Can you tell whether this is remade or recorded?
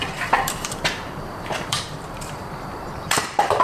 remade